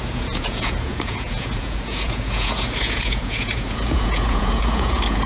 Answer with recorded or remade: remade